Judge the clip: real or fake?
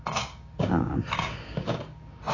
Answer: fake